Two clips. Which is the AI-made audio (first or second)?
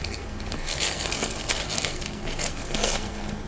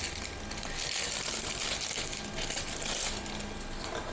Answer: first